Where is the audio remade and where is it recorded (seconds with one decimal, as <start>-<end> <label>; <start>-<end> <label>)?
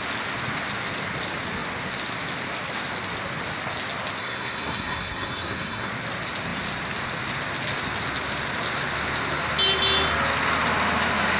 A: 0.0-4.2 recorded; 4.2-5.9 remade; 5.9-11.4 recorded